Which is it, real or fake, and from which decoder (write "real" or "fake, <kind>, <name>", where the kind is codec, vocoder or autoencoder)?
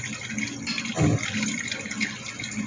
real